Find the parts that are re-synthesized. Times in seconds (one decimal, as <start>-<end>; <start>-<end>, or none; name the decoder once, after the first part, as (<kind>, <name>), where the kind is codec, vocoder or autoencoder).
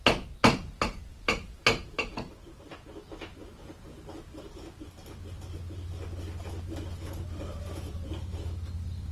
1.1-3.0 (vocoder, BigVGAN v2)